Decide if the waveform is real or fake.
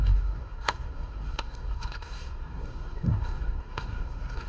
fake